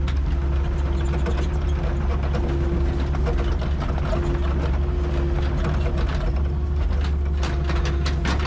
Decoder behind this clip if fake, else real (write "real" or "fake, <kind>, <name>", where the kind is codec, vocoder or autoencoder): real